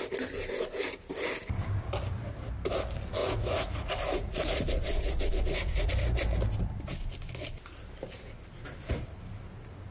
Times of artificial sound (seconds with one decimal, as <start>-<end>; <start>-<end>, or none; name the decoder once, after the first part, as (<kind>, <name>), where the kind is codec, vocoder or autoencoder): 3.2-5.9 (vocoder, Vocos)